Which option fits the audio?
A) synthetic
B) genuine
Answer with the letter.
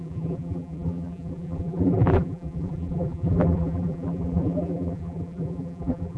A